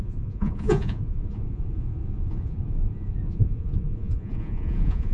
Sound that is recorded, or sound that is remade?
remade